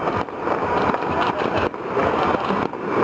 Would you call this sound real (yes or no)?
yes